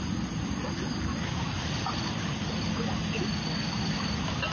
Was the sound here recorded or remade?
recorded